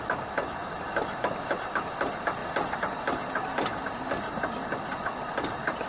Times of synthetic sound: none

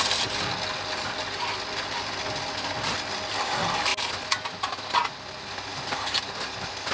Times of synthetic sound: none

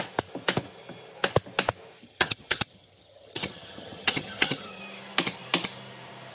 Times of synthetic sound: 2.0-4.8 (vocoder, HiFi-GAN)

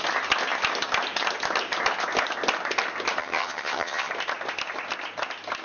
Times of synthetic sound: 3.2-4.1 (vocoder, HiFi-GAN)

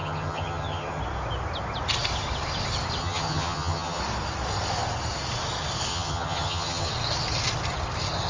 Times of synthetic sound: 0.0-1.0 (vocoder, HiFi-GAN); 3.0-4.0; 5.9-6.9

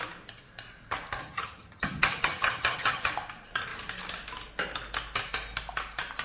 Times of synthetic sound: 1.2-3.1 (vocoder, HiFi-GAN)